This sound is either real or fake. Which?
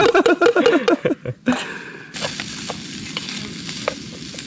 real